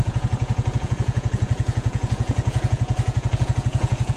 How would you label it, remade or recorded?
remade